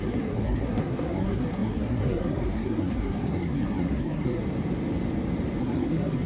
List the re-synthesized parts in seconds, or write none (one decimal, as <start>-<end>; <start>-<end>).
0.0-4.4; 5.6-6.3